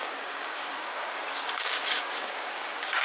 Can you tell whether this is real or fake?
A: fake